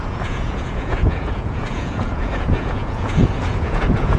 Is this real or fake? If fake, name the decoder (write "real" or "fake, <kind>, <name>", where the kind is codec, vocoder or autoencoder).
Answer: fake, vocoder, Vocos